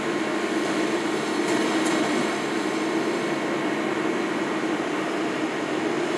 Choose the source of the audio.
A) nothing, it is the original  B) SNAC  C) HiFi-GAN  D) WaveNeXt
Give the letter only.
A